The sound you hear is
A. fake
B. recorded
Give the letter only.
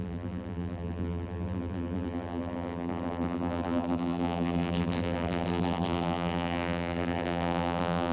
A